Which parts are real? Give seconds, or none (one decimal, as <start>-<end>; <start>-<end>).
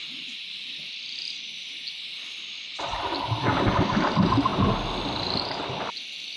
0.0-6.4